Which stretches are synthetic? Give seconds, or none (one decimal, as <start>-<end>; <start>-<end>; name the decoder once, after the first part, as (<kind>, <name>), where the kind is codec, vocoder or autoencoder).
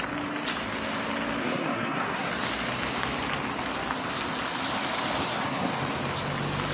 1.4-2.3 (codec, SNAC); 5.2-5.7